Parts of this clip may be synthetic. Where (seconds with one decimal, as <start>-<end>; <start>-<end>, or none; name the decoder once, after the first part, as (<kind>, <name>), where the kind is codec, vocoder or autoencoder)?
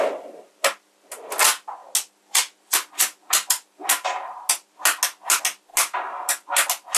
none